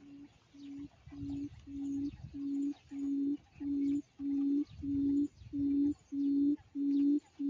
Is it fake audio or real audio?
real